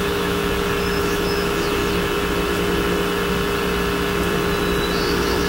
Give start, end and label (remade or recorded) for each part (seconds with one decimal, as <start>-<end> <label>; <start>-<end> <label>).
0.0-0.4 remade; 0.4-1.0 recorded; 1.0-1.8 remade; 1.8-5.1 recorded; 5.1-5.5 remade